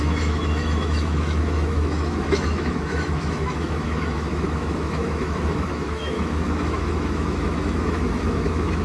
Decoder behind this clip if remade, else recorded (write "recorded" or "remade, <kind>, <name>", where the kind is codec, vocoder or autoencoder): remade, autoencoder, DAC-VAE